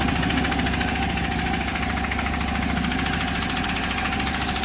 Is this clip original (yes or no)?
yes